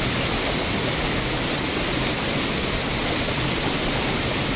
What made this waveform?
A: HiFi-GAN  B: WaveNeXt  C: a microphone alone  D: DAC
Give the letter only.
C